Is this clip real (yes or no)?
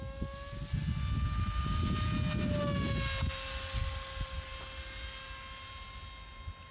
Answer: yes